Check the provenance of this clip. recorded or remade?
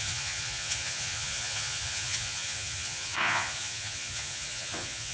remade